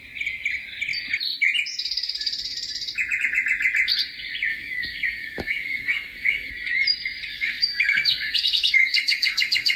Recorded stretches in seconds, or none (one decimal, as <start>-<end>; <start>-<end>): 0.0-4.5; 6.5-7.3